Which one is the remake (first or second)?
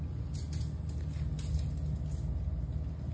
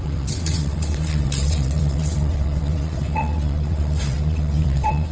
second